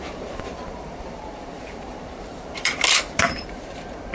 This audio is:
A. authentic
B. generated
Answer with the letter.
B